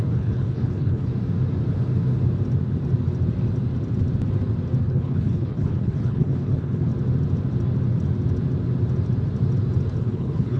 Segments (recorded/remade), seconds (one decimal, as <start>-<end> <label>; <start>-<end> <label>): 0.0-1.1 remade; 1.1-4.8 recorded; 4.8-6.9 remade; 6.9-10.0 recorded; 10.0-10.6 remade